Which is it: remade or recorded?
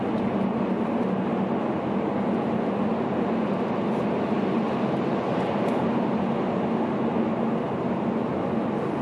recorded